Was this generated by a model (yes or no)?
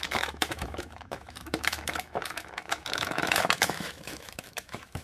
yes